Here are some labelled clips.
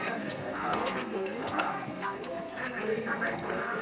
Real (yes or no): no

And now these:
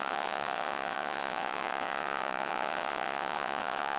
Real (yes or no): no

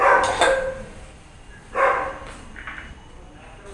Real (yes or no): yes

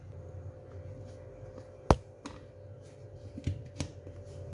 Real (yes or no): yes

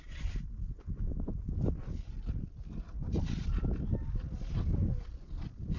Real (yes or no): yes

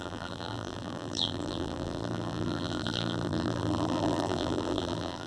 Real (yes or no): no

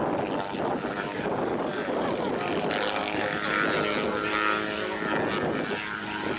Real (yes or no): yes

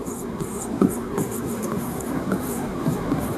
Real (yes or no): no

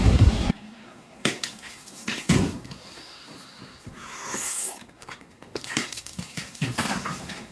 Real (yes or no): no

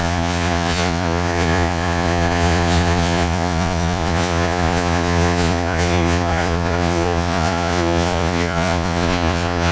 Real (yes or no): no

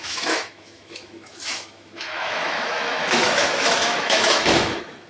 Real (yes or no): no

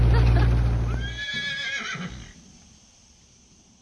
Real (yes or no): yes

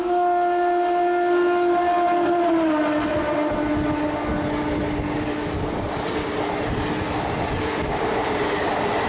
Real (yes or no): yes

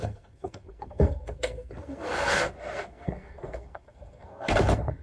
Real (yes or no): no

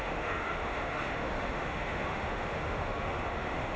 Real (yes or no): no